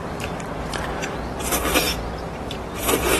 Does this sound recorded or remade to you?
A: remade